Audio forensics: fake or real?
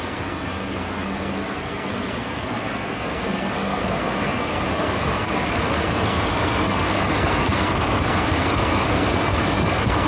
fake